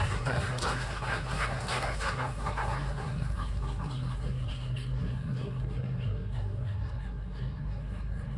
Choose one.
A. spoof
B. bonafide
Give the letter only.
A